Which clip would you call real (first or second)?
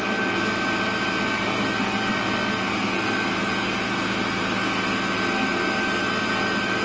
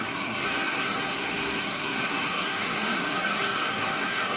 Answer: first